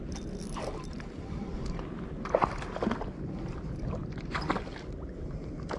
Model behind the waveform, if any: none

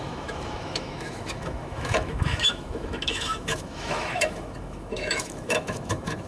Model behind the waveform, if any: autoencoder, DAC-VAE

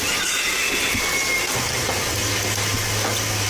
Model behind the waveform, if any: none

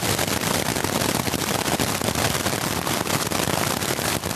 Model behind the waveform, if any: none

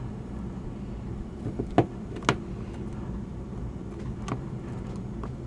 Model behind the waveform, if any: none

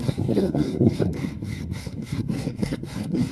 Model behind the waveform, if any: codec, SNAC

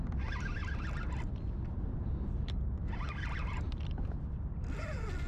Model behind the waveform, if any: none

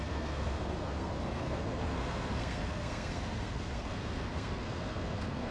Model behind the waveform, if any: codec, SNAC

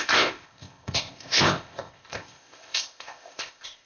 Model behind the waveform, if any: codec, ZipCodec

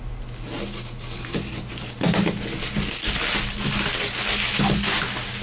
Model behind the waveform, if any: none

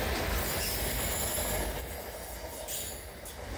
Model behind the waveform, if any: none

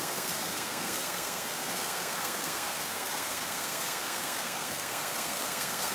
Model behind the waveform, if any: codec, SNAC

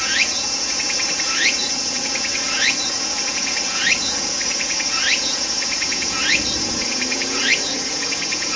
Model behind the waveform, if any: vocoder, Vocos